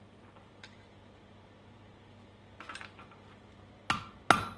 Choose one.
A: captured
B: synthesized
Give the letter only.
A